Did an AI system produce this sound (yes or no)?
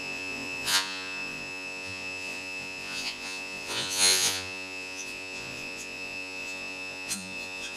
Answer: yes